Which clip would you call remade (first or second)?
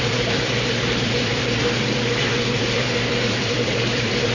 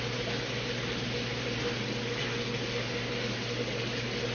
first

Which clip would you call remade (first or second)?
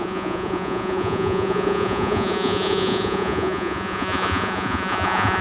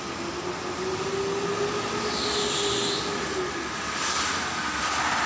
first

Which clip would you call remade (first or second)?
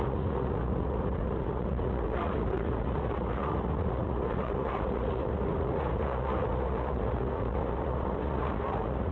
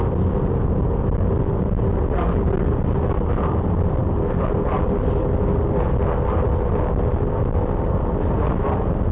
first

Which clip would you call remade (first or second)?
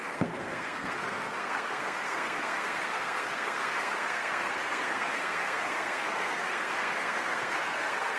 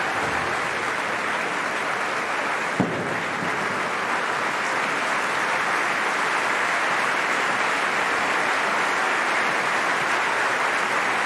first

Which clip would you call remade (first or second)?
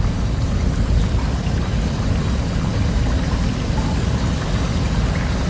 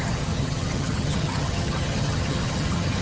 second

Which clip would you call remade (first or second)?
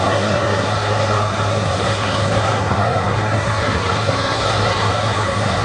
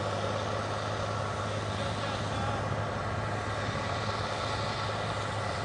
first